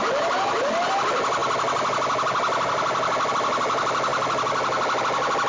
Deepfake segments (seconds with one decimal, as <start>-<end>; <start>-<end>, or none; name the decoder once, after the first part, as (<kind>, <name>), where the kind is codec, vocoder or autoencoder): none